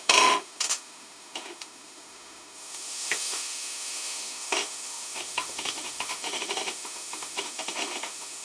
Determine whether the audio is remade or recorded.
remade